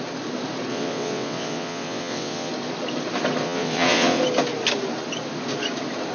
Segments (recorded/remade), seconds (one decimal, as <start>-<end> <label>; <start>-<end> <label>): 0.0-0.7 recorded; 0.7-2.5 remade; 2.5-3.4 recorded; 3.4-4.2 remade; 4.2-6.1 recorded